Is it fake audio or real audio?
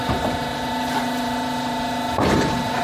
fake